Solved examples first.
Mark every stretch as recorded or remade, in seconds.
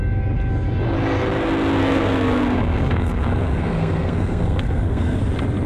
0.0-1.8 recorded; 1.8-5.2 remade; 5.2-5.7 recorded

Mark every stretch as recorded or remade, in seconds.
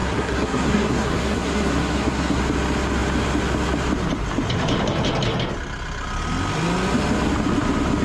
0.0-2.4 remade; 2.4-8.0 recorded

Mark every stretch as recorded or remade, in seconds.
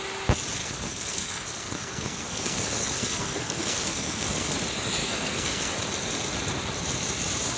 0.0-0.6 recorded; 0.6-4.5 remade; 4.5-5.0 recorded; 5.0-5.7 remade; 5.7-7.6 recorded